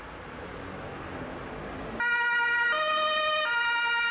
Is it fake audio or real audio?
real